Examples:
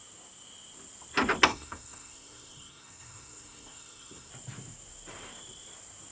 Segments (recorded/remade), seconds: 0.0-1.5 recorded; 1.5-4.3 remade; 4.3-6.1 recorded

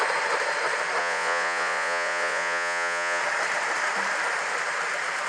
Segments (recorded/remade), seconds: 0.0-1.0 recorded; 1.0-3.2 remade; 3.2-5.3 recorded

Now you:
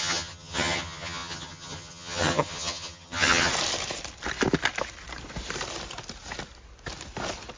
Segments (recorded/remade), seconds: 0.0-3.5 remade; 3.5-7.6 recorded